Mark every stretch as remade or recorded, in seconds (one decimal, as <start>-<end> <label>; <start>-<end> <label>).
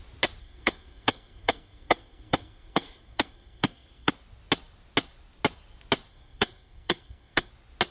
0.0-0.4 recorded; 0.4-4.1 remade; 4.1-6.1 recorded; 6.1-7.5 remade; 7.5-7.9 recorded